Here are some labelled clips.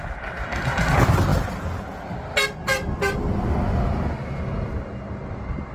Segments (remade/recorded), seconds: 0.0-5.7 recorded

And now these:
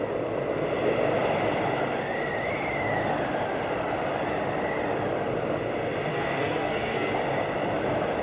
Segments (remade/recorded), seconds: 0.0-6.1 recorded; 6.1-7.1 remade; 7.1-8.2 recorded

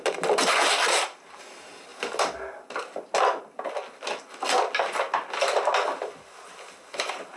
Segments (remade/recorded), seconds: 0.0-7.4 recorded